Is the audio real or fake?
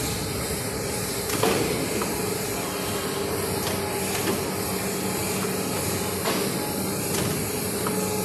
real